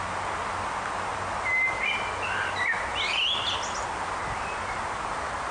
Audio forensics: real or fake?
real